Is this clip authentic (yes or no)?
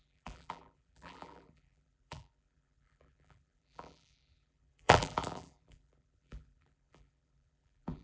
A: no